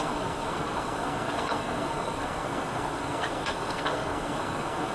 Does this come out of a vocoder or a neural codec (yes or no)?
yes